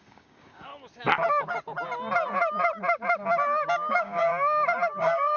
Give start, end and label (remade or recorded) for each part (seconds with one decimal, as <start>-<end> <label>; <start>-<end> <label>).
0.0-0.7 remade; 0.7-3.9 recorded; 3.9-4.3 remade; 4.3-5.0 recorded; 5.0-5.4 remade